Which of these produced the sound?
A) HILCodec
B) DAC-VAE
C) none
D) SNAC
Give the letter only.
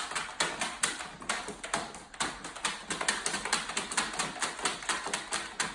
C